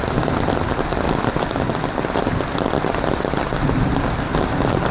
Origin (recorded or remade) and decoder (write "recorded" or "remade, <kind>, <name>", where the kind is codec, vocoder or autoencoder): recorded